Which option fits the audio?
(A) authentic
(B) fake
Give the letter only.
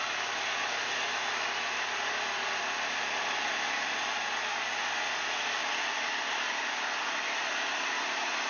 A